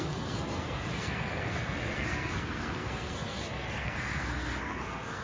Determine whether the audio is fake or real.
fake